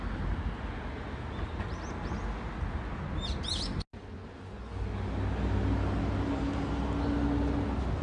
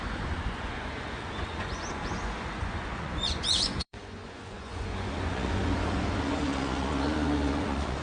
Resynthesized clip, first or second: second